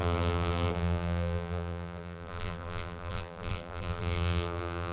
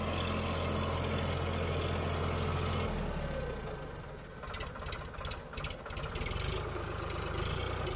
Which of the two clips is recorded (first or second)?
second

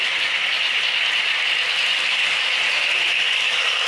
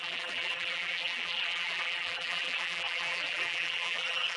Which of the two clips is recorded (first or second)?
first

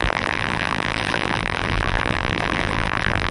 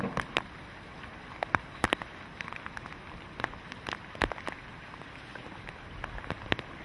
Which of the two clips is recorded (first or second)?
second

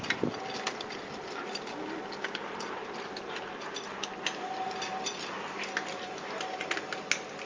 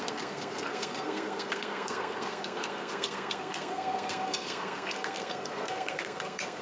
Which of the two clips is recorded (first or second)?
first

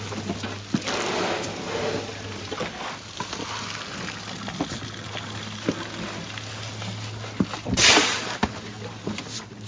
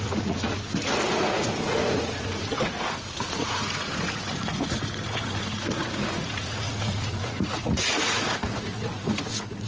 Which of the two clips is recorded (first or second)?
first